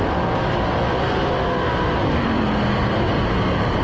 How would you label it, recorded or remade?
recorded